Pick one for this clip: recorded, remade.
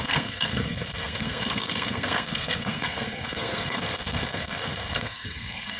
remade